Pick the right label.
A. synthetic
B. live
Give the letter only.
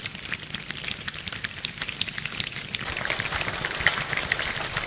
B